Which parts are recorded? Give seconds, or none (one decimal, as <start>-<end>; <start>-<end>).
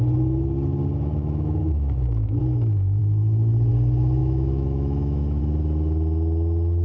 0.0-1.1; 2.4-3.0; 3.7-4.2; 5.4-6.8